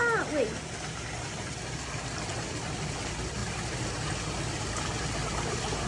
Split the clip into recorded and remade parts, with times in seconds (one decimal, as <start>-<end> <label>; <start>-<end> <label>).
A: 0.0-5.9 recorded